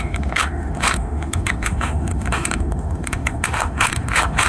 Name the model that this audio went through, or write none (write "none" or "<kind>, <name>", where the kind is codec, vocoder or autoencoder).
autoencoder, DAC-VAE